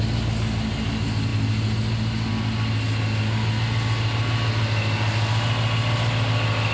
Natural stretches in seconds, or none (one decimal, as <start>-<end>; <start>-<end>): 0.0-6.7